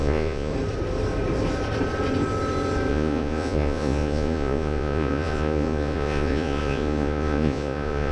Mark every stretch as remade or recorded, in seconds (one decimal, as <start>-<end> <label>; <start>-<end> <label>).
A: 0.0-0.5 remade; 0.5-2.9 recorded; 2.9-8.1 remade